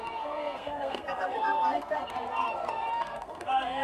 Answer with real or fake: fake